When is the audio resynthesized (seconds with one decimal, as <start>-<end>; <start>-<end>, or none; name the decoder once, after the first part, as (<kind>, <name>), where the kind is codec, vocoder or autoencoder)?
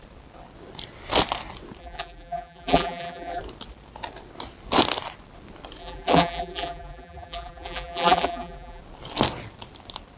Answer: 1.8-3.4 (vocoder, BigVGAN v2); 5.8-8.8